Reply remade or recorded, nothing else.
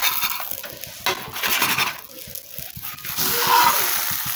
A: recorded